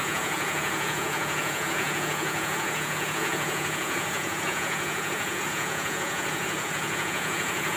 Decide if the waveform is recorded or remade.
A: remade